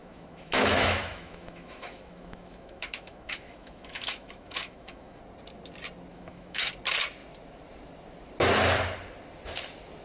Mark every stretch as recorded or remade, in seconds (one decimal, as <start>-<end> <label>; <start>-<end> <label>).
0.0-5.2 remade; 5.2-6.1 recorded; 6.1-6.7 remade; 6.7-10.0 recorded